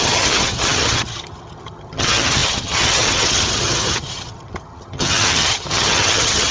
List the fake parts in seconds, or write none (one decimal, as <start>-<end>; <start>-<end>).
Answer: 0.0-6.5